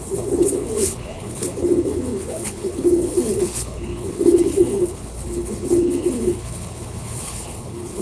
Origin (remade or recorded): remade